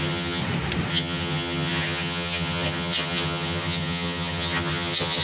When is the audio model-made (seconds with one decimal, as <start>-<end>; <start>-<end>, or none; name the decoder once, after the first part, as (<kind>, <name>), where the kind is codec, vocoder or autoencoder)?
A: 0.0-0.4 (vocoder, HiFi-GAN); 0.9-5.2